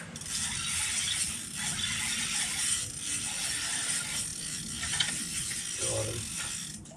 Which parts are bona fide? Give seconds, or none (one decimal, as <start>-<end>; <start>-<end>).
0.0-7.0